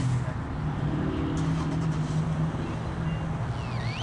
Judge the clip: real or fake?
real